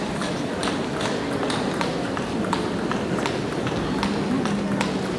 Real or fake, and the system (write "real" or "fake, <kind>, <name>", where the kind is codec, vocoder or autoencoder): real